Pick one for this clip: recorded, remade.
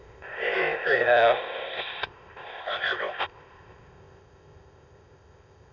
remade